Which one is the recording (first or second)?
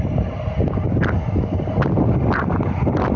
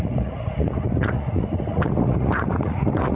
first